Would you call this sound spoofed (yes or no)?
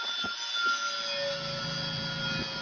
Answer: no